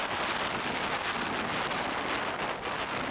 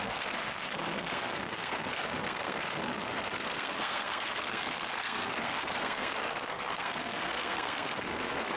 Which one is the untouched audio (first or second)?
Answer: first